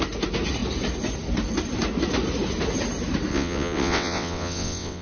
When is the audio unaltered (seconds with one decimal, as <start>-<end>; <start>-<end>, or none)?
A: 0.0-3.3